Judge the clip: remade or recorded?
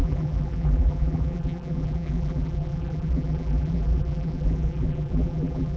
remade